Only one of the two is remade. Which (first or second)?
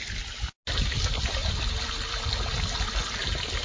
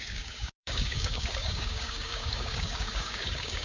second